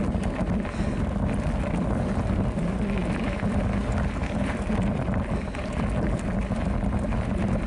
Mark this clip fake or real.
real